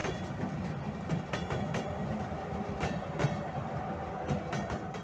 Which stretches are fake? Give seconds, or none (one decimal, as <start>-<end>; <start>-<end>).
0.0-3.0